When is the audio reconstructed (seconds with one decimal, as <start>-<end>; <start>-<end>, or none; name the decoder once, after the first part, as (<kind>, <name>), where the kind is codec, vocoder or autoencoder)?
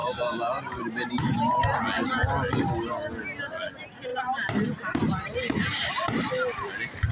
0.0-1.8 (vocoder, BigVGAN v2); 4.1-5.9